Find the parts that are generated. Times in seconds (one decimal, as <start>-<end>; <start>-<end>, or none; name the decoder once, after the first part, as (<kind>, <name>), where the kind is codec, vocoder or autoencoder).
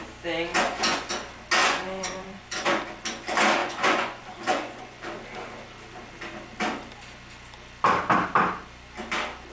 0.5-1.1 (vocoder, Vocos); 1.6-2.8; 3.6-5.0